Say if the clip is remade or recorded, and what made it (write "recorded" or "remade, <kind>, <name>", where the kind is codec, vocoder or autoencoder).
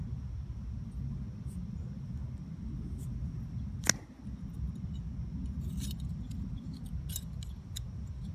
recorded